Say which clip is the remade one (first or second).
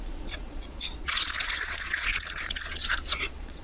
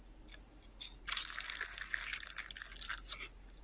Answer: first